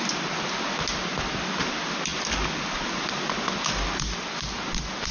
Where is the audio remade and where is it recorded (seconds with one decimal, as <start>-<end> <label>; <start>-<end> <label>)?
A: 0.0-5.1 recorded